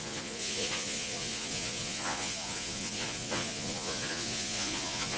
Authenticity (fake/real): fake